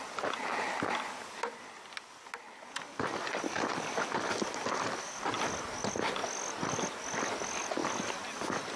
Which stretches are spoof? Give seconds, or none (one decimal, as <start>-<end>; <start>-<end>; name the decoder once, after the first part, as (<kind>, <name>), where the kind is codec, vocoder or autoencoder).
none